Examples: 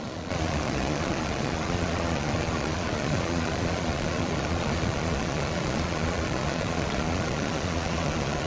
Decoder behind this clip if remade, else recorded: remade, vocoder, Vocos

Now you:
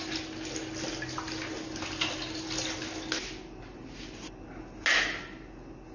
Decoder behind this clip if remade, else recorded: recorded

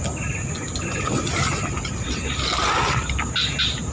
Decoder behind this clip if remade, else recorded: recorded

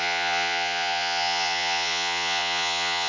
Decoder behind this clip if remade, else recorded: remade, vocoder, Vocos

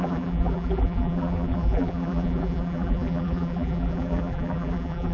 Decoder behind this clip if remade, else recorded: remade, vocoder, BigVGAN v2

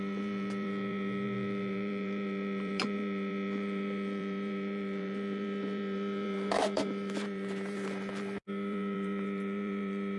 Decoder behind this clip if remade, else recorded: remade, vocoder, BigVGAN v2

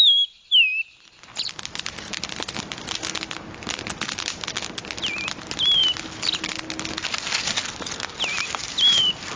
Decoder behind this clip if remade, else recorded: recorded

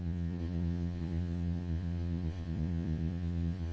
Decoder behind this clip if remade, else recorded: remade, vocoder, Vocos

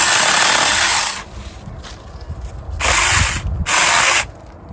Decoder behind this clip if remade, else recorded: recorded